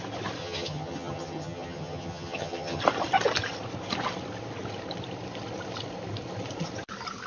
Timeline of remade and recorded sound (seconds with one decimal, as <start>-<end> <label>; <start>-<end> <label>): 0.0-0.4 recorded; 0.4-2.8 remade; 2.8-7.3 recorded